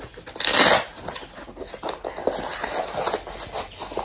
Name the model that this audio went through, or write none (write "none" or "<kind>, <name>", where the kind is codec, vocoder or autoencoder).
none